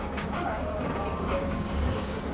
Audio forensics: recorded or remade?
remade